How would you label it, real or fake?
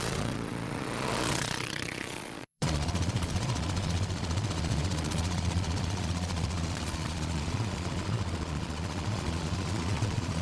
fake